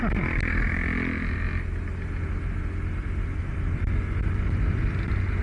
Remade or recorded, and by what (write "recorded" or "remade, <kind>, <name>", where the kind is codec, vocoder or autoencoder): recorded